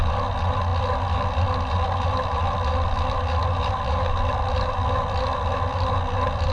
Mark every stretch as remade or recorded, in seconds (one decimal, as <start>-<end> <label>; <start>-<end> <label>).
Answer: 0.0-6.5 recorded